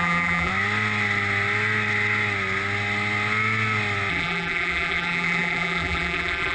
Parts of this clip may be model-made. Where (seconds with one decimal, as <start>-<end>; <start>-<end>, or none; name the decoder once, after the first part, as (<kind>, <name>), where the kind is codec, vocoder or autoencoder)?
0.0-0.5 (vocoder, BigVGAN v2); 4.1-6.5

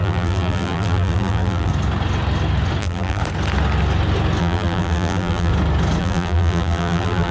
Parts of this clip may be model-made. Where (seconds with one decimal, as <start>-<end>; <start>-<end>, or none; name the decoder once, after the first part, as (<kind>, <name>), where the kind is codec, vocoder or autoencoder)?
0.0-1.7 (vocoder, BigVGAN v2); 2.8-3.2; 4.4-5.5; 6.0-7.3

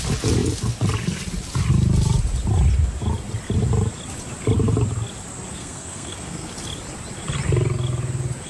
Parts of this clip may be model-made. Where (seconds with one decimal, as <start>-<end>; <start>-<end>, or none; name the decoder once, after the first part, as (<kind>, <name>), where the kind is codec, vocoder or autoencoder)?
5.5-6.5 (codec, SNAC)

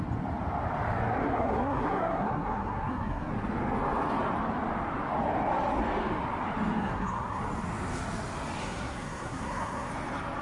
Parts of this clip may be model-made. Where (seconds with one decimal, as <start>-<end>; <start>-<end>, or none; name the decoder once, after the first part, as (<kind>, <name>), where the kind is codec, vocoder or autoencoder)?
1.2-3.3 (codec, SNAC); 6.8-7.4; 8.6-9.9

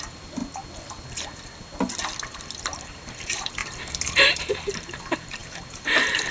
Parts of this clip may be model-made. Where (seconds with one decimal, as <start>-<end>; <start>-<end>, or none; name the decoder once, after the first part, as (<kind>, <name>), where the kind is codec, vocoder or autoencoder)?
0.0-0.4 (vocoder, BigVGAN v2); 2.6-3.6; 4.2-6.3